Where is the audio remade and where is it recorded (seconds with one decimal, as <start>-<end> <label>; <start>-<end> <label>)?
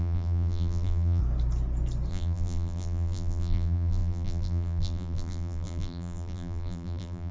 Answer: 0.0-1.2 remade; 1.2-2.1 recorded; 2.1-7.3 remade